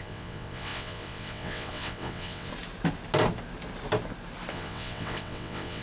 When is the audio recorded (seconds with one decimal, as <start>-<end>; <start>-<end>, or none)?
2.5-4.5